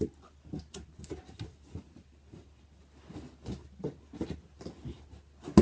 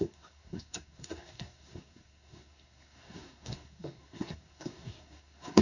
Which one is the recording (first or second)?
first